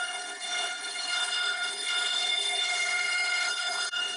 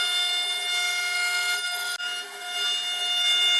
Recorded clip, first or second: second